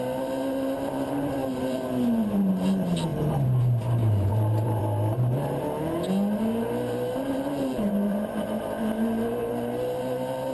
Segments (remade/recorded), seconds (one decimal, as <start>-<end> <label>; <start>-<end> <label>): 0.0-4.8 remade; 4.8-6.6 recorded; 6.6-10.5 remade